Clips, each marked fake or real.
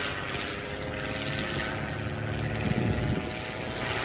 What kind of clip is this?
real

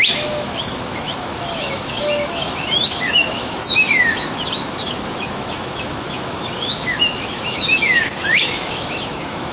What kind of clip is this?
fake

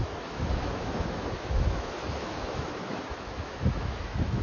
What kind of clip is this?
fake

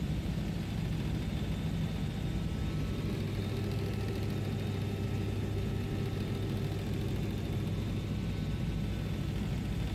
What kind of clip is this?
real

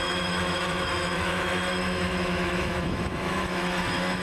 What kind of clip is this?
fake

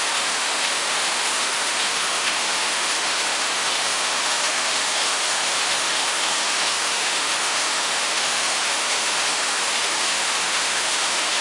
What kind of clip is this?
fake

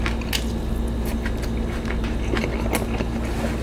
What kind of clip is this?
real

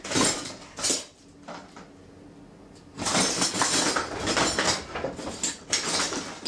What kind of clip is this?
real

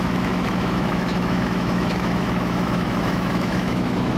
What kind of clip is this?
fake